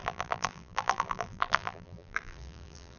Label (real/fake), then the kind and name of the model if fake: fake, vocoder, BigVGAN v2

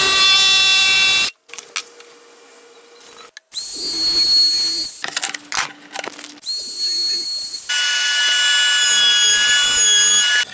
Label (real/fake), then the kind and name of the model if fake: real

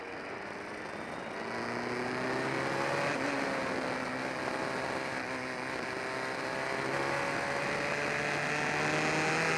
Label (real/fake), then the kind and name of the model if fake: real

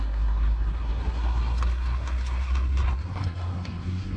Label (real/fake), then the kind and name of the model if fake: fake, codec, SNAC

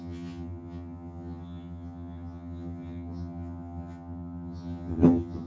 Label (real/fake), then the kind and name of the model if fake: fake, vocoder, HiFi-GAN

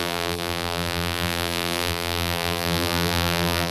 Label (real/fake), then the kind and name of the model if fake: fake, vocoder, BigVGAN v2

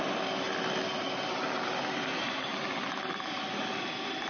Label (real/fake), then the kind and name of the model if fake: real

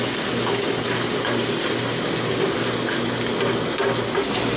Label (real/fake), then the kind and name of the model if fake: real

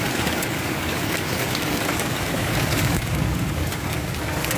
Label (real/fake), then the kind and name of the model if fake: fake, codec, DAC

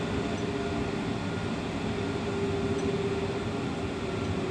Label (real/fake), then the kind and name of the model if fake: real